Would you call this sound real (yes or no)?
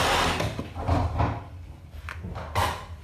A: yes